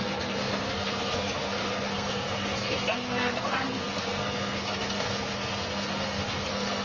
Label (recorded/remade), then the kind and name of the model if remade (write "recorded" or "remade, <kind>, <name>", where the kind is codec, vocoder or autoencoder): remade, codec, SNAC